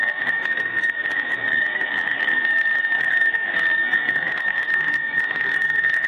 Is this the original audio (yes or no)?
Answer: no